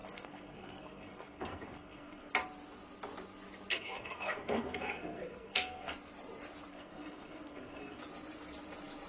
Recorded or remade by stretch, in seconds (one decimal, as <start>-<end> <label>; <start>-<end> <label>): 0.0-2.3 remade; 2.3-3.7 recorded; 3.7-5.9 remade; 5.9-6.7 recorded; 6.7-8.0 remade; 8.0-9.1 recorded